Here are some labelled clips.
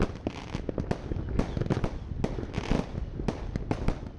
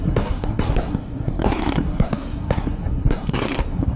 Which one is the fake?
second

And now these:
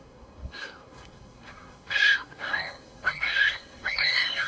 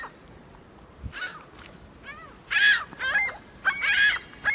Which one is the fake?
first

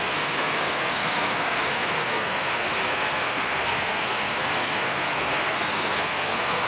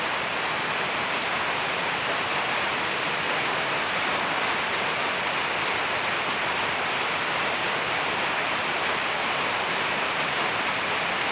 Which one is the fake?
first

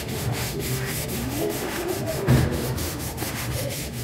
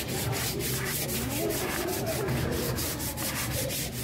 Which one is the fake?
first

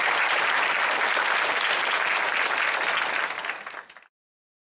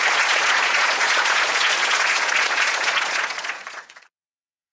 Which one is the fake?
second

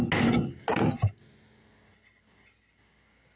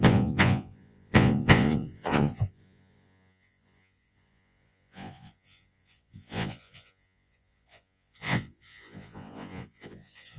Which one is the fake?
second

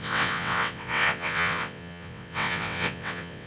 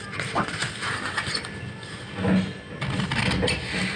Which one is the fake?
first